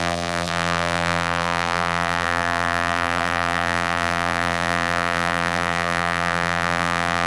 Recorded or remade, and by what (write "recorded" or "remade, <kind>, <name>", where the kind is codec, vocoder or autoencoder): remade, vocoder, BigVGAN v2